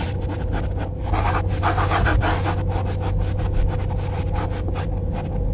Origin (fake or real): real